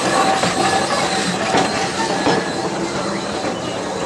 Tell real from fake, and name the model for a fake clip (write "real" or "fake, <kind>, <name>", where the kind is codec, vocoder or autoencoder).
real